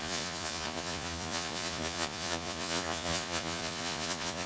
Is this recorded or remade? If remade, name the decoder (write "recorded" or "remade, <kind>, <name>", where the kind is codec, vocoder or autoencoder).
remade, vocoder, Vocos